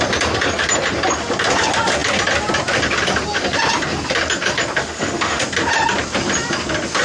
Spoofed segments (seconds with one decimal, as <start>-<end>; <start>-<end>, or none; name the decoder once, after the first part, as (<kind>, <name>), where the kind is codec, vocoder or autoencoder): 4.8-5.4 (autoencoder, DAC-VAE)